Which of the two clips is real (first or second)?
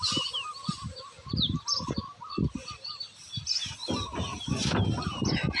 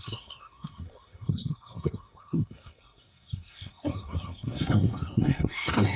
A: first